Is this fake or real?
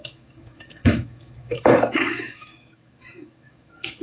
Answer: fake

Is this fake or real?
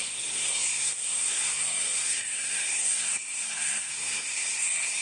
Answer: fake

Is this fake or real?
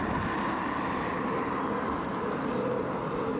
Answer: real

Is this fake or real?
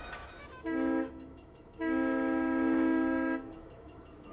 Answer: fake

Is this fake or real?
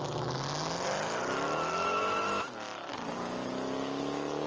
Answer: real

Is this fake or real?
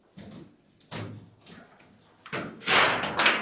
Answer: real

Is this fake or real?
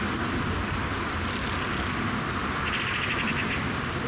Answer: real